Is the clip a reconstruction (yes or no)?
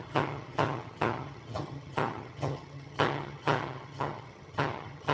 yes